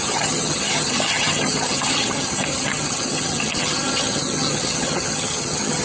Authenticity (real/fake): fake